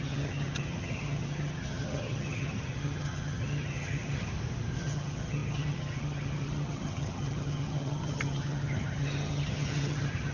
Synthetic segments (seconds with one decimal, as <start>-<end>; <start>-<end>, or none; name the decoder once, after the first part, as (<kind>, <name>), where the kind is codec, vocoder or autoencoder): 0.0-4.3 (vocoder, HiFi-GAN); 4.8-10.3